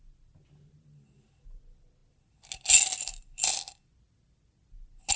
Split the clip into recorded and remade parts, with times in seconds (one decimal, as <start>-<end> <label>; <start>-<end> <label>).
0.0-5.2 recorded